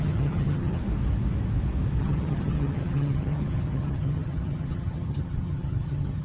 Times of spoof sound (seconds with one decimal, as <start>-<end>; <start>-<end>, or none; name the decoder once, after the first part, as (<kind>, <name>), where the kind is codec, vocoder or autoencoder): 0.0-0.8 (vocoder, HiFi-GAN); 2.0-6.2